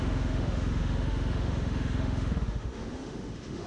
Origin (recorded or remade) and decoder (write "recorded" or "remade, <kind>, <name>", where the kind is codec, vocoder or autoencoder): remade, autoencoder, DAC-VAE